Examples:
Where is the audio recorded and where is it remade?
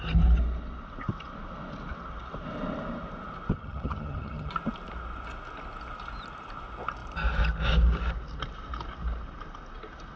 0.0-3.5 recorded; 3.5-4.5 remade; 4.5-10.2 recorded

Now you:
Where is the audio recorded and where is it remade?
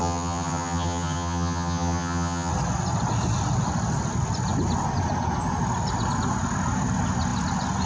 0.0-2.5 remade; 2.5-7.9 recorded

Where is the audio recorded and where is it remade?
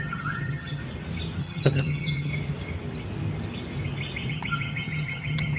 0.0-0.8 remade; 0.8-1.4 recorded; 1.4-2.3 remade; 2.3-4.3 recorded; 4.3-5.6 remade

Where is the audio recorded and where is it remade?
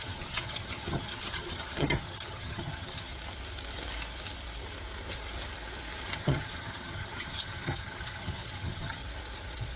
0.0-3.1 remade; 3.1-6.1 recorded; 6.1-9.0 remade; 9.0-9.8 recorded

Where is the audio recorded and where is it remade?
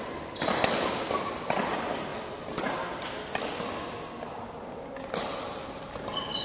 0.0-6.4 recorded